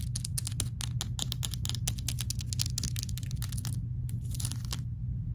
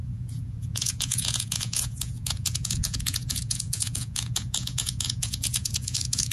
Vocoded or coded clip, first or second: second